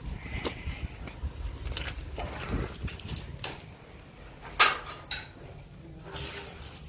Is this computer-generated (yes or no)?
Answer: no